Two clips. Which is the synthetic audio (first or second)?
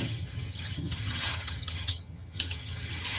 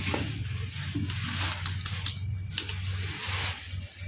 first